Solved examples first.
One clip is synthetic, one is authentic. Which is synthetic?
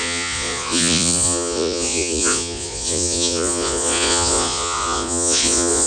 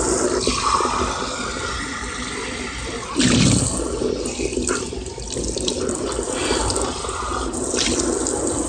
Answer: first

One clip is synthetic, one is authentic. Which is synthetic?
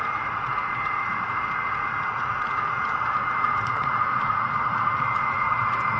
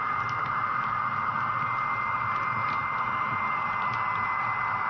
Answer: first